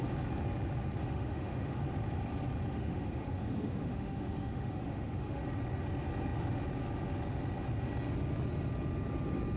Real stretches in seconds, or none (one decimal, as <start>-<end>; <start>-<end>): 0.0-1.0; 1.8-2.7; 5.4-9.6